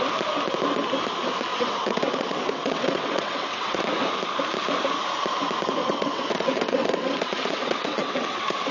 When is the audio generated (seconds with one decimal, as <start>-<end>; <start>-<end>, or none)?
1.5-3.8; 5.8-8.7